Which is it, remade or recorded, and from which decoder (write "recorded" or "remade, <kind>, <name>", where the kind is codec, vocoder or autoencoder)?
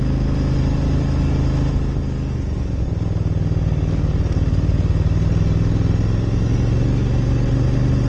recorded